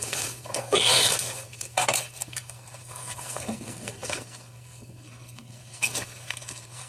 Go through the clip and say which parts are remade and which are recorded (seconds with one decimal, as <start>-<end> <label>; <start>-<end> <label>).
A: 0.0-6.9 remade